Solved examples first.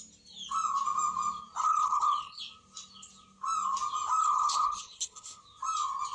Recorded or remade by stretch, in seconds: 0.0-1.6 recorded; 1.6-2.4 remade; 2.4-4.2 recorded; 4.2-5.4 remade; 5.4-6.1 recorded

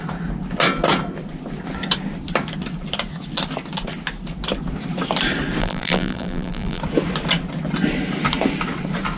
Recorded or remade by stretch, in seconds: 0.0-5.6 recorded; 5.6-6.8 remade; 6.8-9.2 recorded

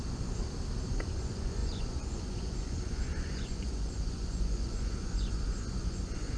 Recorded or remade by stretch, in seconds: 0.0-0.4 remade; 0.4-0.9 recorded; 0.9-6.4 remade